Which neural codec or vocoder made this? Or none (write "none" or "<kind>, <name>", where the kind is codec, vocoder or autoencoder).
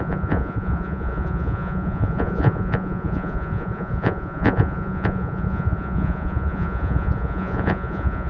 vocoder, Vocos